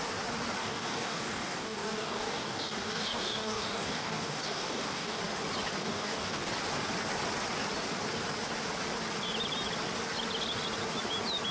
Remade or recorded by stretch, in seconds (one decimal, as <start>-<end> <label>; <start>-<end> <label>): 0.0-0.6 recorded; 0.6-5.2 remade; 5.2-5.8 recorded; 5.8-6.5 remade; 6.5-11.5 recorded